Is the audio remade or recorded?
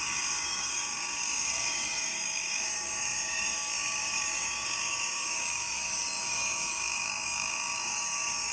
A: remade